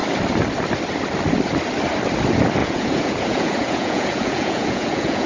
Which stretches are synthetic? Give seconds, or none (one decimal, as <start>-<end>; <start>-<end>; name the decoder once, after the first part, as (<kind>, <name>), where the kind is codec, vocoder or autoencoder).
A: 2.6-5.3 (vocoder, Vocos)